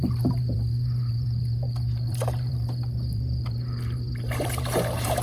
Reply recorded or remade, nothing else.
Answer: remade